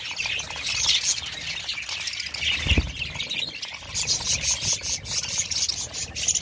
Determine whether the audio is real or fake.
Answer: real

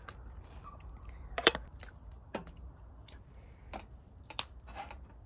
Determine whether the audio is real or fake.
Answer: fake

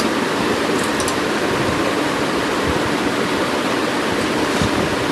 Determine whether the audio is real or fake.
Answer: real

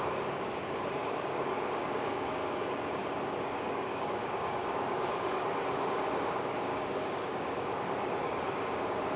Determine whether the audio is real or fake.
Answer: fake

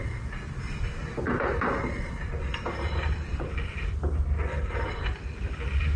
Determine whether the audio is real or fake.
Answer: real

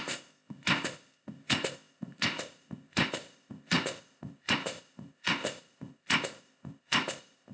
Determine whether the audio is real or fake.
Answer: fake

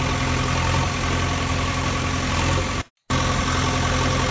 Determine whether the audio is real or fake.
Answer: real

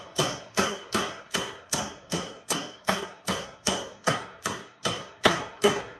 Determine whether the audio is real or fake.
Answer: fake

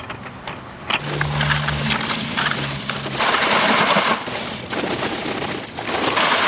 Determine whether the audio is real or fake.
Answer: real